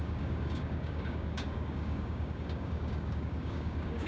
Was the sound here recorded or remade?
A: remade